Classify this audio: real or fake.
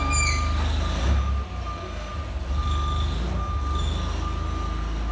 real